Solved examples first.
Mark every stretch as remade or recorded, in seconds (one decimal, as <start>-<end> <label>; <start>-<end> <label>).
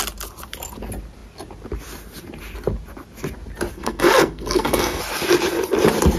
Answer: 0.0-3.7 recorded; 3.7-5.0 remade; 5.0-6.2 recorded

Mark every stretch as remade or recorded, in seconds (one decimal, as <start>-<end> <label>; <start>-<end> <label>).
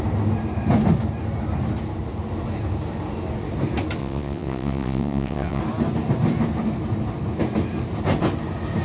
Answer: 0.0-4.0 recorded; 4.0-5.6 remade; 5.6-8.8 recorded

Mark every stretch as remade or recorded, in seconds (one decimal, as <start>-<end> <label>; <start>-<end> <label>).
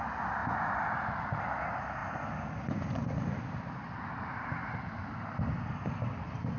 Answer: 0.0-0.4 recorded; 0.4-1.4 remade; 1.4-6.6 recorded